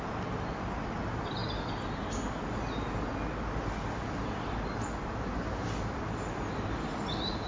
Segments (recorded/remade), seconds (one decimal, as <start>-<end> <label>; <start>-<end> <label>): 0.0-7.5 recorded

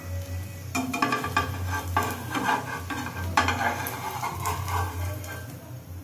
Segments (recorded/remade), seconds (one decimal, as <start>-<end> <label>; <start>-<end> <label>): 0.0-6.0 recorded

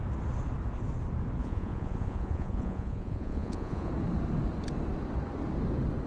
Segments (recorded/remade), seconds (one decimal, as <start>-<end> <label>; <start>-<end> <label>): 0.0-1.4 recorded; 1.4-3.9 remade; 3.9-6.1 recorded

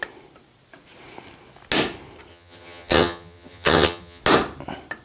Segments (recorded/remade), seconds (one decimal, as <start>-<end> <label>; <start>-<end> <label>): 0.0-2.3 recorded; 2.3-4.2 remade; 4.2-5.0 recorded

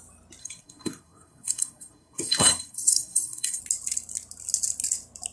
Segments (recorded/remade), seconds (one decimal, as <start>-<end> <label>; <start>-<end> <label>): 0.0-0.4 recorded; 0.4-3.6 remade; 3.6-5.3 recorded

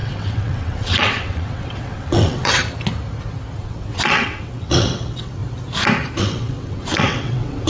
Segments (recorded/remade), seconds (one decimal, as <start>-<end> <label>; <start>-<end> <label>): 0.0-2.6 remade; 2.6-3.6 recorded; 3.6-5.4 remade; 5.4-6.2 recorded; 6.2-7.7 remade

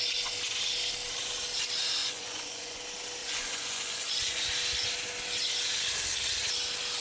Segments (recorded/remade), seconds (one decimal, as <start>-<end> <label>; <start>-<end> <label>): 0.0-2.0 recorded; 2.0-2.8 remade; 2.8-3.2 recorded; 3.2-4.5 remade; 4.5-7.0 recorded

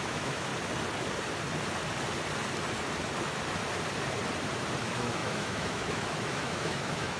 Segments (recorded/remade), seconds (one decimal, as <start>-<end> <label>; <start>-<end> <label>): 0.0-0.5 remade; 0.5-4.8 recorded; 4.8-7.2 remade